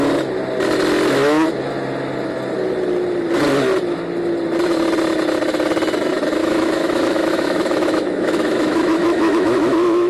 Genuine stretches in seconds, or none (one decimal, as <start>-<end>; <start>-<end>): 0.0-6.4